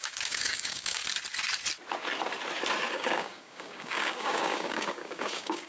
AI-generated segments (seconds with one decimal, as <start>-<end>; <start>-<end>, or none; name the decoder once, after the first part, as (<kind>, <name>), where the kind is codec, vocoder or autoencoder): 0.0-1.0 (codec, DAC); 2.9-5.7